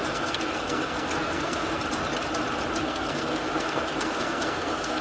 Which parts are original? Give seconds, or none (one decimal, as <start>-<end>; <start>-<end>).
1.8-2.8